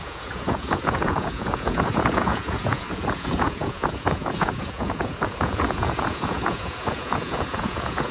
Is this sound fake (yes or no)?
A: yes